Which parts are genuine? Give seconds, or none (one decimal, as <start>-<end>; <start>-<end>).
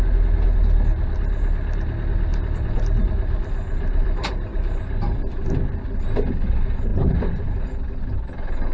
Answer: 0.0-2.3; 5.3-6.9; 7.7-8.7